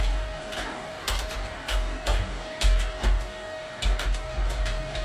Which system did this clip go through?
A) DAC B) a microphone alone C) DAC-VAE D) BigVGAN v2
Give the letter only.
A